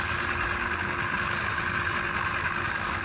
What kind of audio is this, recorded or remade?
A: recorded